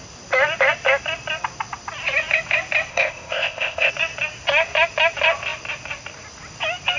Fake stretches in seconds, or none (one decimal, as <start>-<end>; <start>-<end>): 2.9-3.9